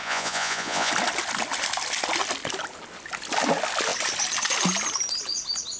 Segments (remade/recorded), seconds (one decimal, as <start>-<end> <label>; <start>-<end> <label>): 0.0-0.9 remade; 0.9-5.8 recorded